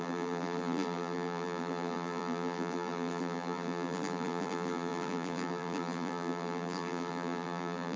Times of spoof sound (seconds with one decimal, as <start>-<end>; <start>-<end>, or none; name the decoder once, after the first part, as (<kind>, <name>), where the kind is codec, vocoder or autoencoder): 0.0-8.0 (vocoder, BigVGAN v2)